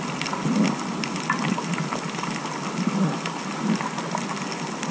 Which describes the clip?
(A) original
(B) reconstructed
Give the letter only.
A